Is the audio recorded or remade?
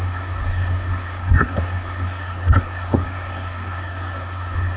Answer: remade